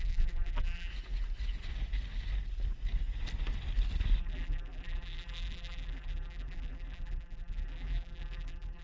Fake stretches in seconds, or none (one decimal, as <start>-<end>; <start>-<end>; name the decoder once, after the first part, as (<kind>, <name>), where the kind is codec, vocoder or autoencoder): 0.0-0.9 (vocoder, BigVGAN v2); 4.2-8.8